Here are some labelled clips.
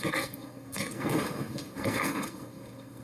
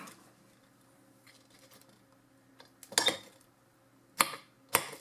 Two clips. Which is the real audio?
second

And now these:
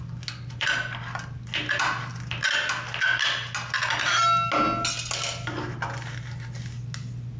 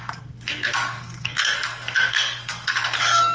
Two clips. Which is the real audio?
first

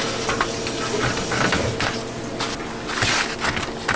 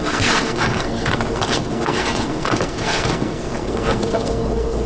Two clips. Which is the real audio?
first